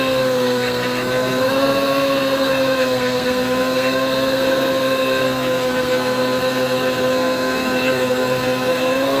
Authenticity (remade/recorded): remade